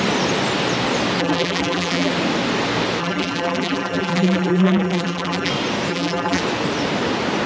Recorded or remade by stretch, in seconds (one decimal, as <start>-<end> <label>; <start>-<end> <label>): 0.0-1.2 recorded; 1.2-2.1 remade; 2.1-3.0 recorded; 3.0-5.5 remade; 5.5-5.9 recorded; 5.9-6.4 remade; 6.4-7.5 recorded

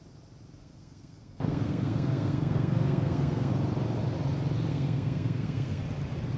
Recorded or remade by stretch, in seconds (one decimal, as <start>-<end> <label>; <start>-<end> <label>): 0.0-0.6 recorded; 0.6-3.5 remade; 3.5-4.7 recorded; 4.7-5.8 remade; 5.8-6.4 recorded

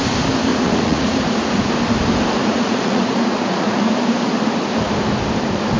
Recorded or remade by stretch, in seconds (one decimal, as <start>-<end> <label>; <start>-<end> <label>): 0.0-0.5 recorded; 0.5-1.7 remade; 1.7-2.4 recorded; 2.4-3.9 remade; 3.9-5.8 recorded

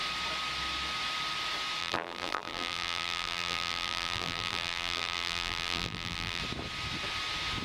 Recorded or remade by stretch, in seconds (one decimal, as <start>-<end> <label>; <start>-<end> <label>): 0.0-1.8 recorded; 1.8-6.4 remade; 6.4-7.6 recorded

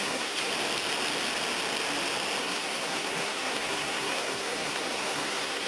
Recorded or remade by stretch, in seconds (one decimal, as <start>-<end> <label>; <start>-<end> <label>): 0.0-0.5 remade; 0.5-2.4 recorded; 2.4-5.7 remade

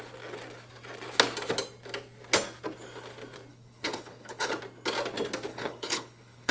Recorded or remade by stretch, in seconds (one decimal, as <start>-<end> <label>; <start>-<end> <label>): 0.0-3.5 recorded; 3.5-4.5 remade; 4.5-5.5 recorded; 5.5-6.5 remade

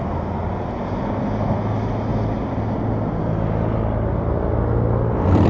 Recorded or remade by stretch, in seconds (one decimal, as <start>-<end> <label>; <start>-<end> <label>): 0.0-5.5 recorded

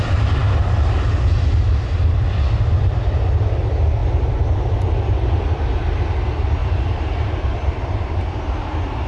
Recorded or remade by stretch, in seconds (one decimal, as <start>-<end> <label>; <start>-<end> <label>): 0.0-6.6 recorded; 6.6-9.1 remade